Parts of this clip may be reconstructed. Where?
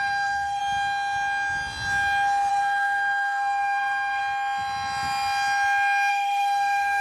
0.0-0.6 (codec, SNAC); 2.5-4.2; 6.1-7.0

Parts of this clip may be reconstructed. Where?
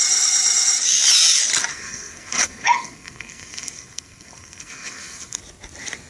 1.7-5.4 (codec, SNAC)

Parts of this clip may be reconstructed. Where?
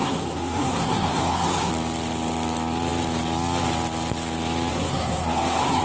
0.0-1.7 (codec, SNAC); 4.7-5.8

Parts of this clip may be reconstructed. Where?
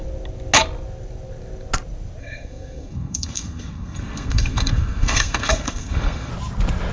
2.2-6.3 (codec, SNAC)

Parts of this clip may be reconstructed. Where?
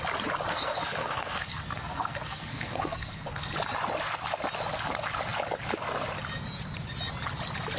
0.5-3.5 (codec, SNAC)